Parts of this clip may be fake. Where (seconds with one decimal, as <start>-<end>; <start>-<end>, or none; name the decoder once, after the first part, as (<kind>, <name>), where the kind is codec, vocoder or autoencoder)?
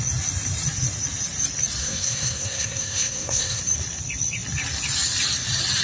1.8-3.6 (codec, SNAC)